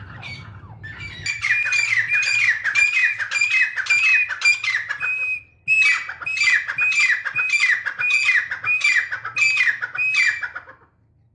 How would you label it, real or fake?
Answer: real